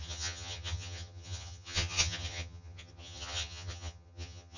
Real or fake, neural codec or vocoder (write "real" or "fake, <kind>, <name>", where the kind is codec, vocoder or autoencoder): fake, vocoder, HiFi-GAN